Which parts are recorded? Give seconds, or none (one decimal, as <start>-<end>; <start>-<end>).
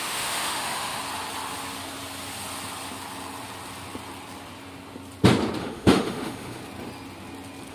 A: 1.0-5.6; 6.6-7.7